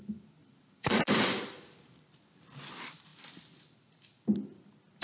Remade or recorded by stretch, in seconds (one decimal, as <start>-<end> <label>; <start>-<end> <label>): 0.0-0.4 recorded; 0.4-2.0 remade; 2.0-5.0 recorded